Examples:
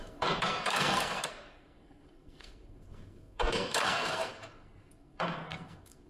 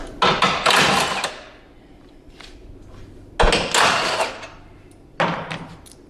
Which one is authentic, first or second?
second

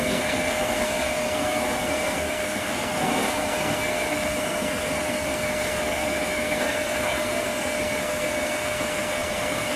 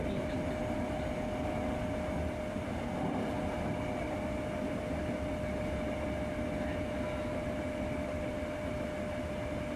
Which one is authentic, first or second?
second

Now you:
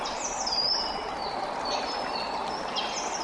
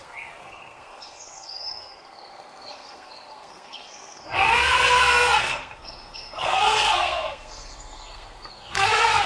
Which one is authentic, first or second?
first